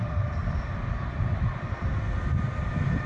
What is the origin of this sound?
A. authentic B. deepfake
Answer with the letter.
B